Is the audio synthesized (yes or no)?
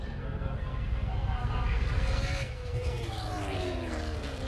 yes